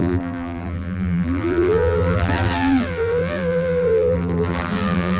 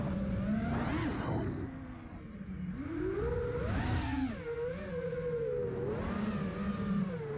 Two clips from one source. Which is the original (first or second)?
second